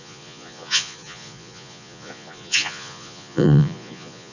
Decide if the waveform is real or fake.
fake